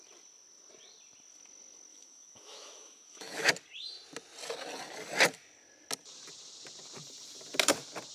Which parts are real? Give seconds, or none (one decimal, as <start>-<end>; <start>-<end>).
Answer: 0.0-1.9; 3.5-8.1